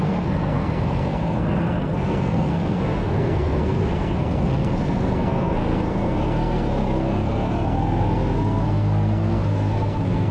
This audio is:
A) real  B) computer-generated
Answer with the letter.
B